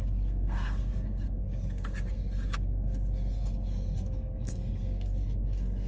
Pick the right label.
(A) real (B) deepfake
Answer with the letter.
B